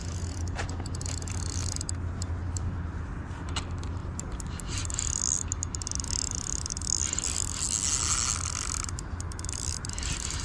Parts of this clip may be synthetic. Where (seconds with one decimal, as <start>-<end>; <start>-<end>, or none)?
none